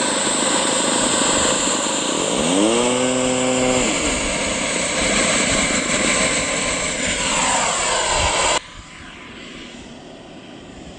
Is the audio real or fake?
real